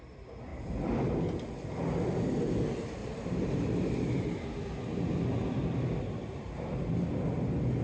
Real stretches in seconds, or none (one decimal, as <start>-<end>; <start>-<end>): 0.0-3.0; 4.0-6.2; 7.1-7.8